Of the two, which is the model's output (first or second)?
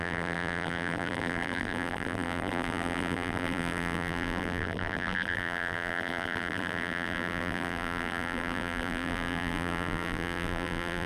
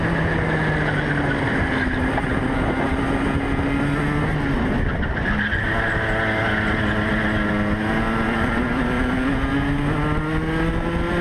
first